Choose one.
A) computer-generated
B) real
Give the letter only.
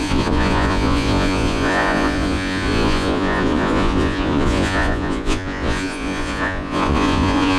A